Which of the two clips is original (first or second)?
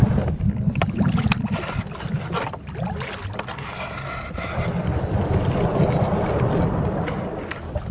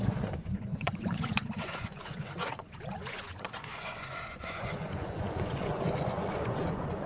first